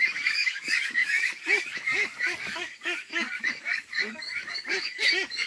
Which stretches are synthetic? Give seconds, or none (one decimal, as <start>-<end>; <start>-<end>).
0.0-5.5